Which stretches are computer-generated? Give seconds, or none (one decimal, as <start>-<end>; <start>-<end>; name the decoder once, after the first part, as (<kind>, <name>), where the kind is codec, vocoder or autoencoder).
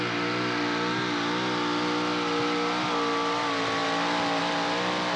none